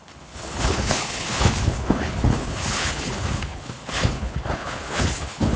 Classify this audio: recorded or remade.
remade